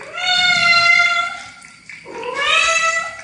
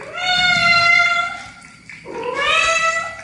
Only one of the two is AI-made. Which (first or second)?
first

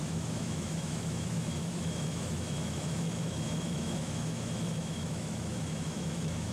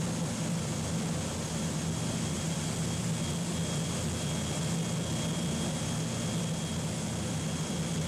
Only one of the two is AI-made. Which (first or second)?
first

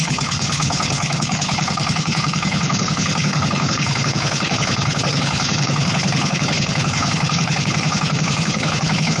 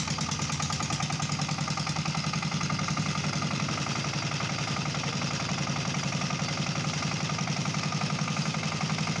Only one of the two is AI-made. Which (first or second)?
first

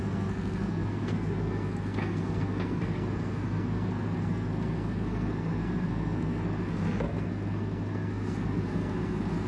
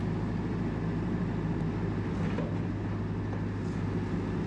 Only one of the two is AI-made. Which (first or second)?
first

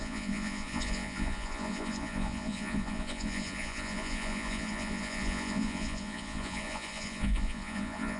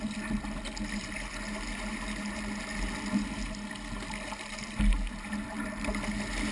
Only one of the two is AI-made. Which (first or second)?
first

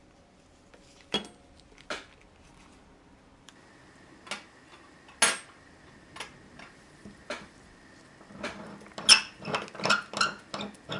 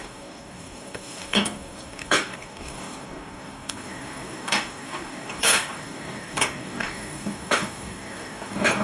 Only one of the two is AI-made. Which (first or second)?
second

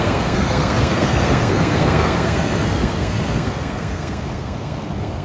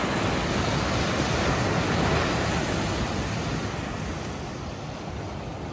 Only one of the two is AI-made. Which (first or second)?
first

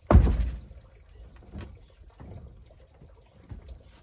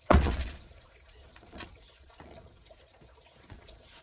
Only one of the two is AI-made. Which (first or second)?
second